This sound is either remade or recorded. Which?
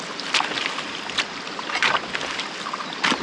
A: recorded